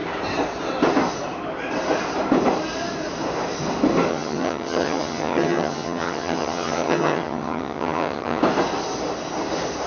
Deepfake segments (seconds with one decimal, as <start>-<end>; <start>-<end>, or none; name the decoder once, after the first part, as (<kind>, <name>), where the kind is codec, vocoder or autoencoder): 4.1-8.4 (vocoder, HiFi-GAN)